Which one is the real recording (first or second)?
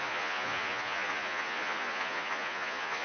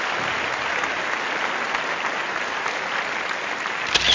second